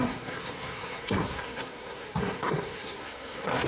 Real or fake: fake